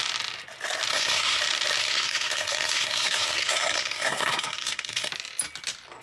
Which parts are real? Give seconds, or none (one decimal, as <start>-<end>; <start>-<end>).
0.0-0.9; 1.4-1.8; 5.1-6.0